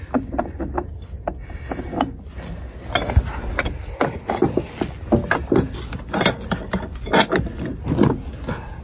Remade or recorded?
recorded